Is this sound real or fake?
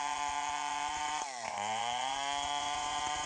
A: fake